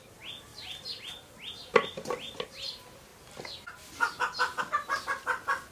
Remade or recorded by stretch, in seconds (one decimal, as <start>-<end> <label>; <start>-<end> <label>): 0.0-5.7 recorded